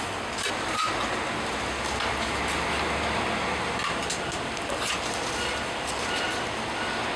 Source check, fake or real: real